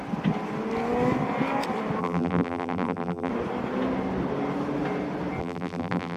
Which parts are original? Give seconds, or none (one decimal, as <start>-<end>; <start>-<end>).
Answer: 0.0-2.0; 3.3-5.4